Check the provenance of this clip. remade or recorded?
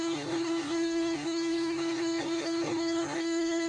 remade